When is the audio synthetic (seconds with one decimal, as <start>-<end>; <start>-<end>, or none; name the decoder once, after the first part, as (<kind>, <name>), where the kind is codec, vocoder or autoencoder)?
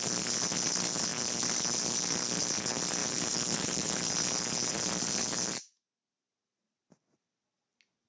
3.0-4.1 (vocoder, BigVGAN v2)